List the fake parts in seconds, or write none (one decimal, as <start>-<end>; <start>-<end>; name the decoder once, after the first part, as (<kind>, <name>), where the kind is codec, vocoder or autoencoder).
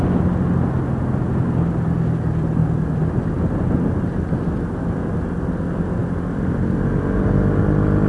none